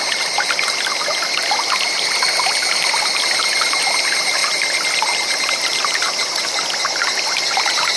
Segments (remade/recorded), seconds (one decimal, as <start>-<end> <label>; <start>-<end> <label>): 0.0-8.0 recorded